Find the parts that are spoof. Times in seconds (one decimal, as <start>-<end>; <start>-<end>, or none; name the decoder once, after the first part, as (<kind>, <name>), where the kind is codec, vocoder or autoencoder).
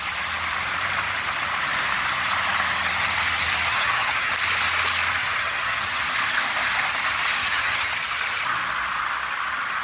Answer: 3.7-4.3 (vocoder, HiFi-GAN); 5.2-6.0; 7.4-7.9